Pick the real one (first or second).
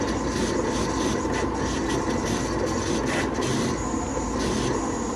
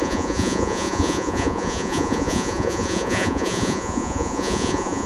first